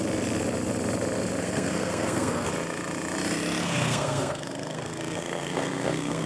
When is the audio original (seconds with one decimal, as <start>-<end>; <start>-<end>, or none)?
0.0-1.4; 2.5-3.6